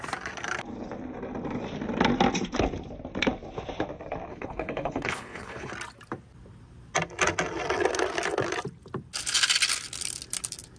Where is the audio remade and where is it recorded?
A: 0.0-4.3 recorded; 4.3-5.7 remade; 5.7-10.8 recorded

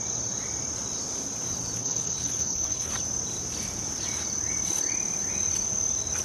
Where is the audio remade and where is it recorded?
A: 0.0-1.8 recorded; 1.8-2.9 remade; 2.9-6.2 recorded

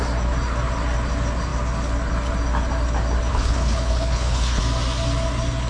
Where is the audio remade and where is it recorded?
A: 0.0-3.3 recorded; 3.3-4.6 remade; 4.6-5.7 recorded

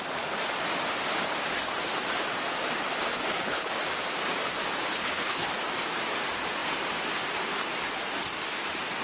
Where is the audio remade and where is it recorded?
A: 0.0-3.1 recorded; 3.1-3.7 remade; 3.7-4.9 recorded; 4.9-5.5 remade; 5.5-9.0 recorded

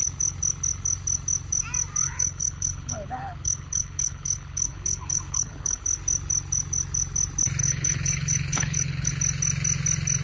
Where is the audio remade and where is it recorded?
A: 0.0-2.0 recorded; 2.0-5.8 remade; 5.8-7.6 recorded; 7.6-9.1 remade; 9.1-10.2 recorded

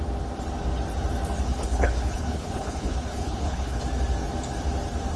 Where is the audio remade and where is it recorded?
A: 0.0-1.5 recorded; 1.5-3.8 remade; 3.8-5.2 recorded

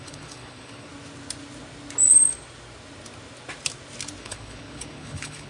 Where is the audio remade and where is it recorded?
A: 0.0-0.9 remade; 0.9-4.2 recorded; 4.2-5.5 remade